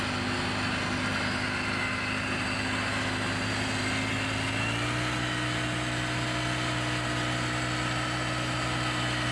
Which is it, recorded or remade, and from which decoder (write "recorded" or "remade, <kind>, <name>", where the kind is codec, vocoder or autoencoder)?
recorded